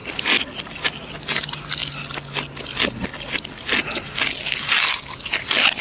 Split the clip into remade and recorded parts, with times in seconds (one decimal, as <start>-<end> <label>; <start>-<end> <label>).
0.0-5.8 recorded